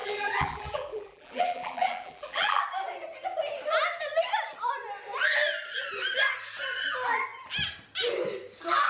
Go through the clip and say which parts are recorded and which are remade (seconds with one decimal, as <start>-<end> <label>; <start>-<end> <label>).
0.0-2.6 remade; 2.6-8.9 recorded